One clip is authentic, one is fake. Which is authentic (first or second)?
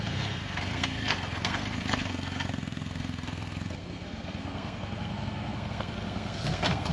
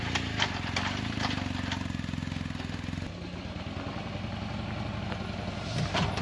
second